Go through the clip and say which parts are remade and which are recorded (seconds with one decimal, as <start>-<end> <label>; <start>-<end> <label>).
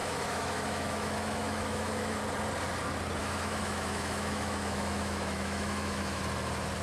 0.0-2.2 remade; 2.2-3.2 recorded; 3.2-6.2 remade; 6.2-6.8 recorded